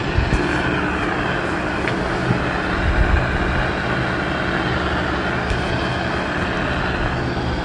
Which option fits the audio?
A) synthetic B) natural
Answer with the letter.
B